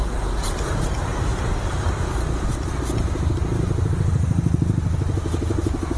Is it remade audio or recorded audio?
recorded